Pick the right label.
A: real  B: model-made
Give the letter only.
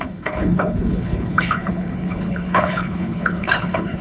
B